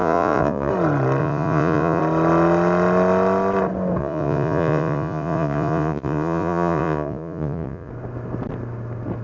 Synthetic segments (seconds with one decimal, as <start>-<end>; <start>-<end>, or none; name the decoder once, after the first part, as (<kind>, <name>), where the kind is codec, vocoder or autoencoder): 0.0-0.7 (vocoder, Vocos); 1.2-2.0; 4.0-7.9